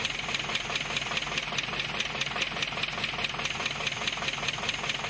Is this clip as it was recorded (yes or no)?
yes